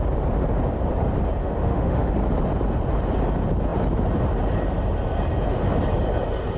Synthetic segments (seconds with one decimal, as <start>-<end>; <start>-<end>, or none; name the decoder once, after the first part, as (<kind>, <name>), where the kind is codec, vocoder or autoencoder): 1.4-2.1 (autoencoder, DAC-VAE)